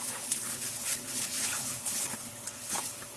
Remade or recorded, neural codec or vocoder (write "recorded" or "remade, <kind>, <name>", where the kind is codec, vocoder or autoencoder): remade, codec, HILCodec